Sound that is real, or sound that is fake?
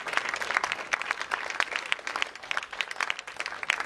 real